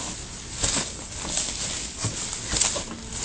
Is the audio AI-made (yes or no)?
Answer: no